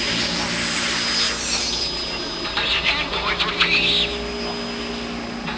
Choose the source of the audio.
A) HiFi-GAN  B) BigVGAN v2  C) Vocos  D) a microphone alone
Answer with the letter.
D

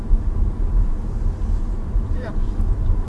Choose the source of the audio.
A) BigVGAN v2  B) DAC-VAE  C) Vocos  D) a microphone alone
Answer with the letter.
A